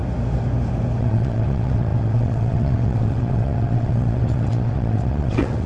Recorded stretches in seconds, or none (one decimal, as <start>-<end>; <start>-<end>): 0.0-1.0